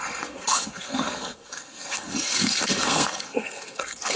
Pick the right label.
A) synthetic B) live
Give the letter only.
A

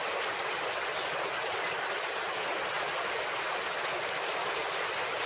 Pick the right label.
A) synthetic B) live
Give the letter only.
B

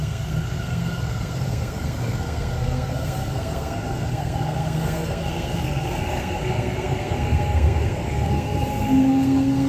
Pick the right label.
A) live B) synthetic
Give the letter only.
B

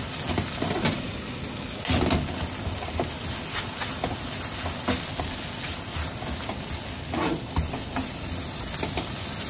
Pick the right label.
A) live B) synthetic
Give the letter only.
A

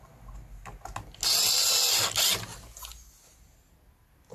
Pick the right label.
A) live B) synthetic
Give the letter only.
A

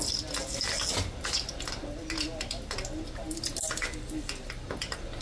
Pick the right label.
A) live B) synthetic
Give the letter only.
A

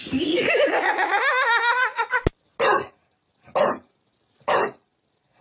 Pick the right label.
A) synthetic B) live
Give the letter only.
B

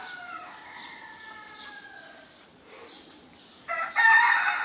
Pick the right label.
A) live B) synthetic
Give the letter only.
A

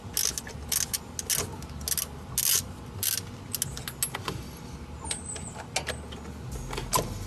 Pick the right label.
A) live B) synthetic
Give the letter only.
A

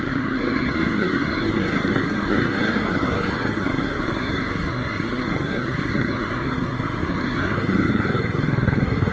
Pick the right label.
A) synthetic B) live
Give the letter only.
A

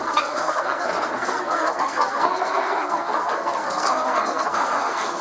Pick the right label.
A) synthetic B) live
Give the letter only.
A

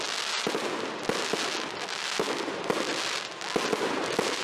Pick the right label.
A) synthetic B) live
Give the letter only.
B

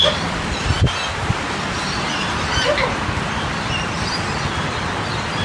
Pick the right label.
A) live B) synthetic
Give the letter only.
A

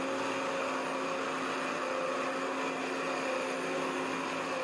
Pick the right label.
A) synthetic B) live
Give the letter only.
B